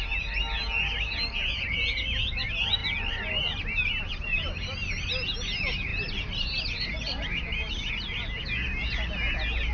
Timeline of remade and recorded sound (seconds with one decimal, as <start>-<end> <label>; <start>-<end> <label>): 0.0-9.7 recorded